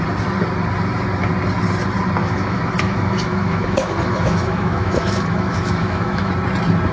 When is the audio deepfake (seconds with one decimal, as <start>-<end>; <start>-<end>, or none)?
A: 2.2-6.3